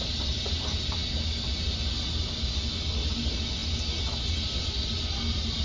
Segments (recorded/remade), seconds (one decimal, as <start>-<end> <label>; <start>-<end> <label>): 0.0-5.6 recorded